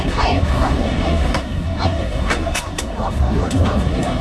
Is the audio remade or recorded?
remade